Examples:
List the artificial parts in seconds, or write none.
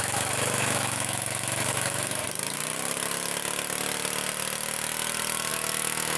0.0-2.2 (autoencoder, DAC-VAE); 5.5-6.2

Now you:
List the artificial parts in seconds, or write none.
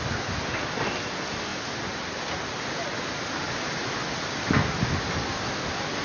none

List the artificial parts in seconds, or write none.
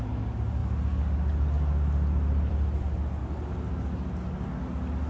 none